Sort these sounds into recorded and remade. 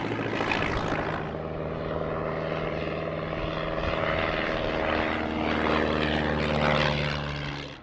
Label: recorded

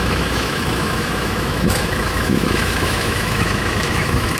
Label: remade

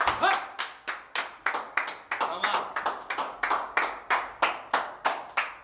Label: recorded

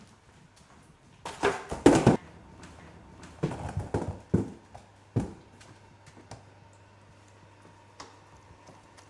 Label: recorded